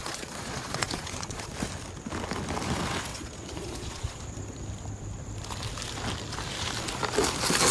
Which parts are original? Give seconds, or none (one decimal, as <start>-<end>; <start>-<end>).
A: 1.5-3.1; 4.2-7.7